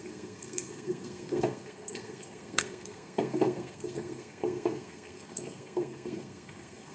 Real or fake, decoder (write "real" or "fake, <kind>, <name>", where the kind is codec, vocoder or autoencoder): fake, codec, SNAC